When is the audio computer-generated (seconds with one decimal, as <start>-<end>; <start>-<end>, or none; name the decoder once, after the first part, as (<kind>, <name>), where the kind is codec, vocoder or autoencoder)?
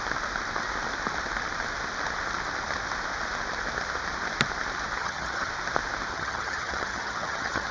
5.0-5.5 (vocoder, HiFi-GAN); 6.1-7.7